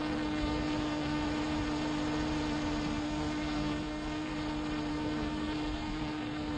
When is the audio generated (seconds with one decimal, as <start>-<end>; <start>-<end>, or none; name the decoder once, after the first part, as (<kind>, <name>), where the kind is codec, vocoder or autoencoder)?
0.0-1.2 (codec, SNAC); 3.0-4.3; 4.9-6.6